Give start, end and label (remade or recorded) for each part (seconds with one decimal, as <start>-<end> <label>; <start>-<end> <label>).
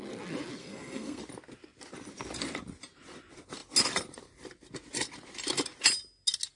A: 0.0-0.6 recorded; 0.6-1.2 remade; 1.2-6.6 recorded